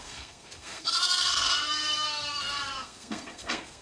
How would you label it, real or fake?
fake